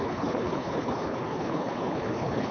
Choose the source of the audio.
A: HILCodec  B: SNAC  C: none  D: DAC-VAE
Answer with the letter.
A